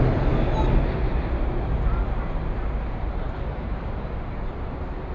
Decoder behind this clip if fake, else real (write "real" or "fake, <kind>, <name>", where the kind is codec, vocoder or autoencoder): real